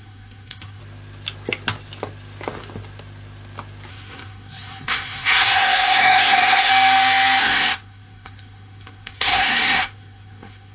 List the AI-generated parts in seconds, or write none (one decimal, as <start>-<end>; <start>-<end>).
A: 0.0-0.8; 3.9-6.7; 7.4-10.7